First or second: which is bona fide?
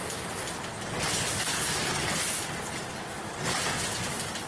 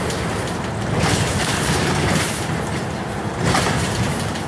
first